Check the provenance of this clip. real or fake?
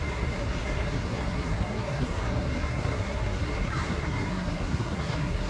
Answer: fake